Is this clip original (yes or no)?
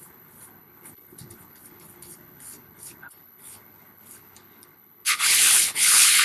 no